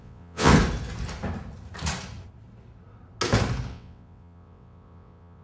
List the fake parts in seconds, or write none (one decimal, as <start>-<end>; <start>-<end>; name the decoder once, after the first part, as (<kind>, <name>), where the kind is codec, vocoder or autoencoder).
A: 0.0-0.5 (vocoder, WaveNeXt); 3.7-5.4